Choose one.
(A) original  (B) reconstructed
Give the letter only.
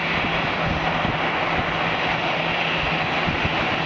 A